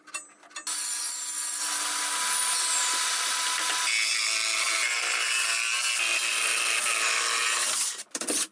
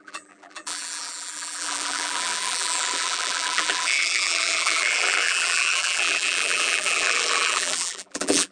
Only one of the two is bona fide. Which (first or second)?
first